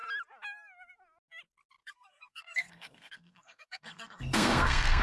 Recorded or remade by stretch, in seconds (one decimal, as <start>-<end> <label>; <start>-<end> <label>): 0.0-1.8 recorded; 1.8-5.0 remade